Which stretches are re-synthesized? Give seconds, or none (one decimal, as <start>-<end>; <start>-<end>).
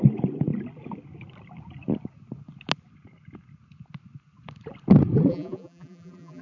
5.3-6.4